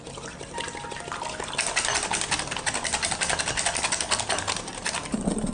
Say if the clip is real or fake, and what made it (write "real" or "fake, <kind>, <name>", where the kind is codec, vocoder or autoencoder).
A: real